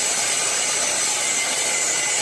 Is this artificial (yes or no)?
no